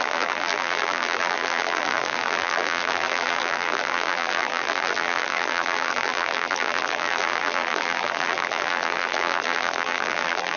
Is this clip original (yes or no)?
no